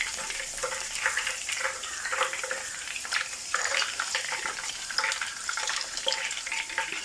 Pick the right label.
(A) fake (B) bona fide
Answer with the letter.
A